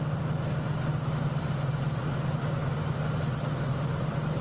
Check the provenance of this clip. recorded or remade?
recorded